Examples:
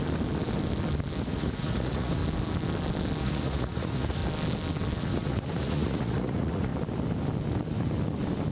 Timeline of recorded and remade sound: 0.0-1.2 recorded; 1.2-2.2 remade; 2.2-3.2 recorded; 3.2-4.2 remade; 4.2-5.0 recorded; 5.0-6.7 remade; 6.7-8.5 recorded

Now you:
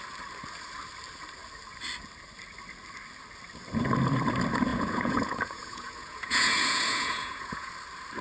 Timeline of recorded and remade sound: 0.0-4.7 recorded; 4.7-7.7 remade; 7.7-8.2 recorded

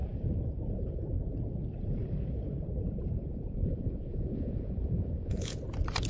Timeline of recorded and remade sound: 0.0-3.2 recorded; 3.2-5.6 remade; 5.6-6.1 recorded

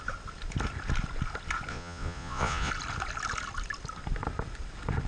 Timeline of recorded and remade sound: 0.0-1.7 recorded; 1.7-2.7 remade; 2.7-5.1 recorded

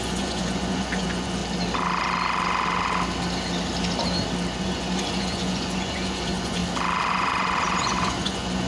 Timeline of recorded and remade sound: 0.0-1.4 remade; 1.4-4.6 recorded; 4.6-6.6 remade; 6.6-7.1 recorded; 7.1-8.7 remade

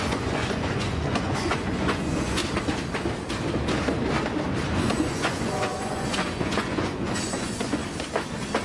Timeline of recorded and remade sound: 0.0-2.4 remade; 2.4-4.7 recorded; 4.7-7.8 remade; 7.8-8.6 recorded

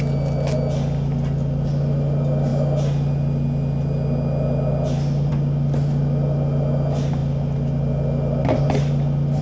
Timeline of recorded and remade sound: 0.0-9.4 recorded